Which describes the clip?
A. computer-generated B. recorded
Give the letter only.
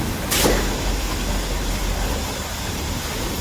B